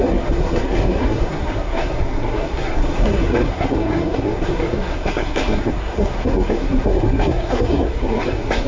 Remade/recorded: remade